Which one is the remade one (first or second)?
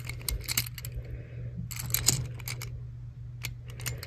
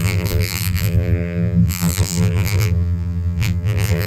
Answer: second